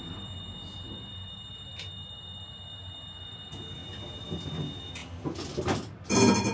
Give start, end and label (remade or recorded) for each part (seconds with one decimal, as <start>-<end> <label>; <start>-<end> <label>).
0.0-6.5 recorded